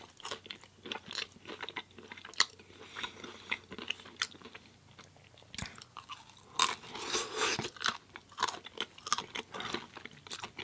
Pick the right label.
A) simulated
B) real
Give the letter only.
B